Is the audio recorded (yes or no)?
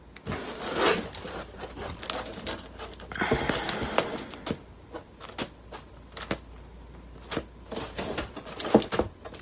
yes